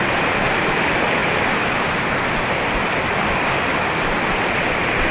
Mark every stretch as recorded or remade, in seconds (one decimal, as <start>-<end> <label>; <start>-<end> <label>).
0.0-5.1 recorded